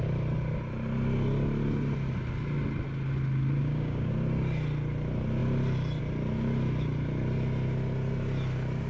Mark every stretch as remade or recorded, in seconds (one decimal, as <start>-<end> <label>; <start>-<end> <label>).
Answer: 0.0-3.6 recorded; 3.6-4.1 remade; 4.1-8.9 recorded